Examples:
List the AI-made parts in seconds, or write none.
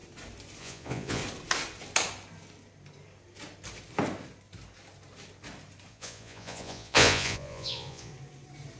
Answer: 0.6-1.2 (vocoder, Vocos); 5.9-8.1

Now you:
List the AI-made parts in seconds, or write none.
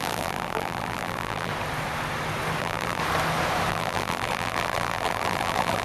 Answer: 0.0-1.5 (vocoder, BigVGAN v2); 2.6-3.0; 3.7-5.8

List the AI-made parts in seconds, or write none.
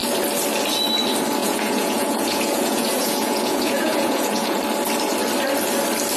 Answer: 1.4-4.6 (vocoder, Vocos)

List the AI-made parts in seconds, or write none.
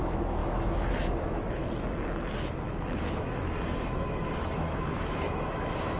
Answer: 0.0-1.6 (autoencoder, DAC-VAE); 3.0-6.0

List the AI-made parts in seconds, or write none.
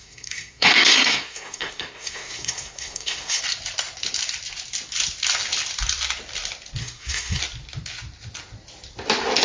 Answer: 0.0-3.4 (codec, SNAC); 6.8-7.4